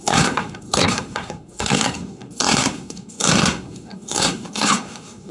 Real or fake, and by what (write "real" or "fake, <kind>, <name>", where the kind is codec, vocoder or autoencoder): fake, codec, SNAC